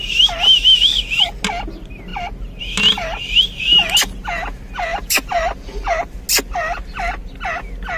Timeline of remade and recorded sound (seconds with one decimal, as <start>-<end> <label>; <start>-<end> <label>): 0.0-2.1 recorded; 2.1-2.6 remade; 2.6-4.9 recorded; 4.9-6.2 remade; 6.2-8.0 recorded